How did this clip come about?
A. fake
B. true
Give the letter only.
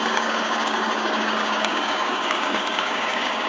A